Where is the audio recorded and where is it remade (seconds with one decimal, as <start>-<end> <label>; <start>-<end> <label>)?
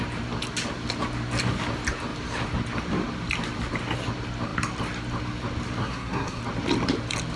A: 0.0-5.8 recorded; 5.8-6.4 remade; 6.4-7.4 recorded